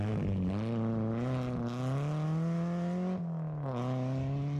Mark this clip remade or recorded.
recorded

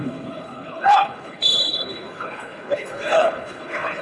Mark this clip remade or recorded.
remade